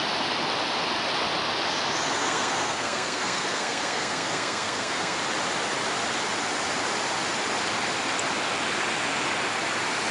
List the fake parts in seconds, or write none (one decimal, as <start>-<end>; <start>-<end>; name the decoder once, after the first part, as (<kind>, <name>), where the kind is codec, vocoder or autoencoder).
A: 2.2-5.2 (codec, SNAC)